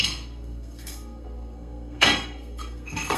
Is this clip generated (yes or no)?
yes